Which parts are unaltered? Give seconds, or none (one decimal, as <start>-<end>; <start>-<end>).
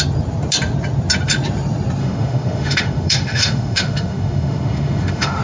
0.0-2.0